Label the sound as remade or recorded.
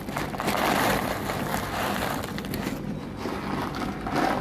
recorded